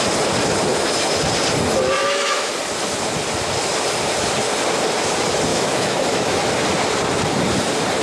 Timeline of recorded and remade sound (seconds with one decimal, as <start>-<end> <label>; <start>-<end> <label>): 0.0-0.7 recorded; 0.7-1.2 remade; 1.2-2.0 recorded; 2.0-2.5 remade; 2.5-5.5 recorded; 5.5-6.4 remade; 6.4-8.0 recorded